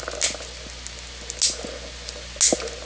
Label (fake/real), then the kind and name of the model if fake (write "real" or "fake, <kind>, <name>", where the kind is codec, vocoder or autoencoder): real